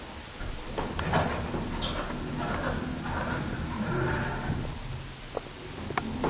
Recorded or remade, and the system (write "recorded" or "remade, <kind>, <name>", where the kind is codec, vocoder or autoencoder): recorded